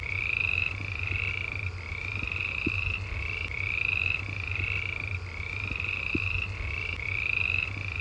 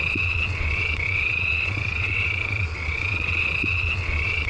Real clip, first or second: first